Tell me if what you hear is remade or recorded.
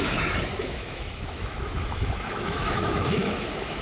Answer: remade